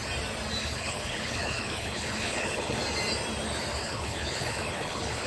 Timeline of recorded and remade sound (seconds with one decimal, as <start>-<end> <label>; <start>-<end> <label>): 0.0-0.6 recorded; 0.6-2.8 remade; 2.8-3.8 recorded; 3.8-5.3 remade